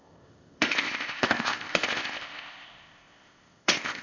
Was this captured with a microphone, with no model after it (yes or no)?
no